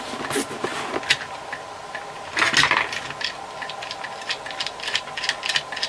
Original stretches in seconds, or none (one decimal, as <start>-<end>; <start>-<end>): 0.0-5.9